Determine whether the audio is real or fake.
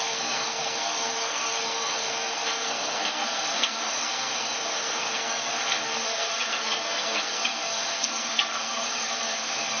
fake